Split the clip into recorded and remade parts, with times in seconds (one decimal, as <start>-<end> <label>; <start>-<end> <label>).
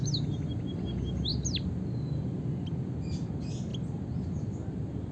0.0-5.1 recorded